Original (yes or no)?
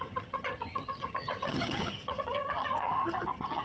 no